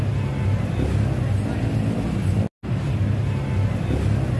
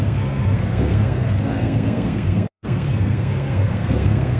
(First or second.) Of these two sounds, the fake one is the second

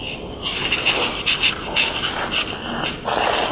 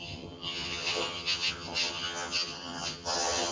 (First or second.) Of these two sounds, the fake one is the second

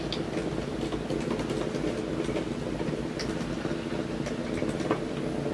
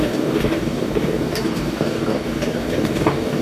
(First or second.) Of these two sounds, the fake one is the second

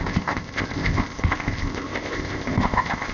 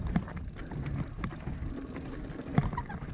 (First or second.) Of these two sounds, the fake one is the first